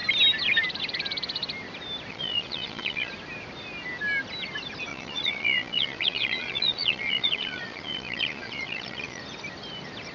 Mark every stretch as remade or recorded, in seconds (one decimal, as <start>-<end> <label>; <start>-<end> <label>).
0.0-2.1 recorded; 2.1-3.1 remade; 3.1-4.9 recorded; 4.9-9.2 remade; 9.2-10.1 recorded